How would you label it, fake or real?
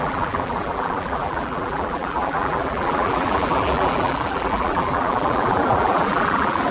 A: fake